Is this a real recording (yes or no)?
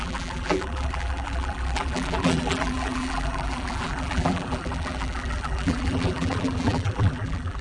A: no